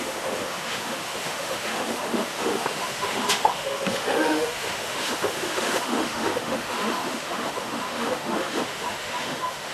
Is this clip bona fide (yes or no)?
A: no